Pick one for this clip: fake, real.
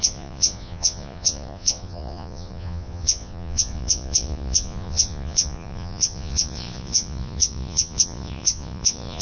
fake